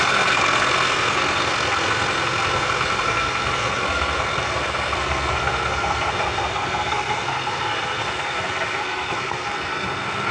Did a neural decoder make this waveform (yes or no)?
yes